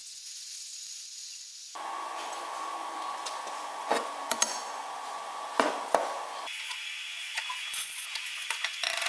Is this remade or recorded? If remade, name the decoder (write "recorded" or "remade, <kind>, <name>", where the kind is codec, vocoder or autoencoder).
remade, vocoder, Vocos